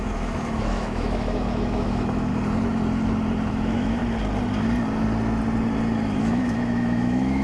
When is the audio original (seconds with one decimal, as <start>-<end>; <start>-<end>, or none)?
2.3-3.5; 4.0-6.2